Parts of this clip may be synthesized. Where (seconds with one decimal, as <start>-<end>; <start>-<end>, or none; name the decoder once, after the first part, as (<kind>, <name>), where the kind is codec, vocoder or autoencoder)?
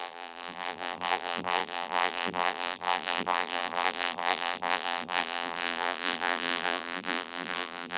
0.0-8.0 (vocoder, BigVGAN v2)